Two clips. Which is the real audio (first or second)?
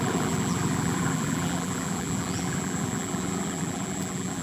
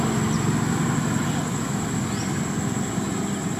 second